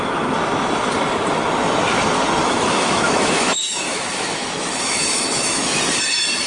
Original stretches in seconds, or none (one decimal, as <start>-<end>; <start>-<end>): 0.0-2.4; 5.8-6.5